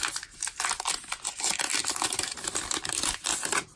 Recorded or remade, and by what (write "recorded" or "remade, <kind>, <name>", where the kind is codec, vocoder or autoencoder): recorded